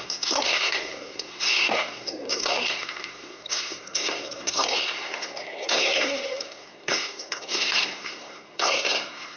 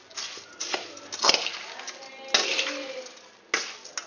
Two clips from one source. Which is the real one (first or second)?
second